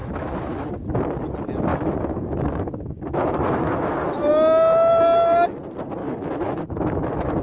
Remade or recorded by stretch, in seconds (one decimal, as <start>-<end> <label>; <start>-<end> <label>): 0.0-1.0 remade; 1.0-1.7 recorded; 1.7-4.3 remade; 4.3-6.0 recorded; 6.0-7.4 remade